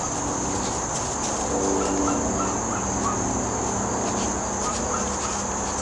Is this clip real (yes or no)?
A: yes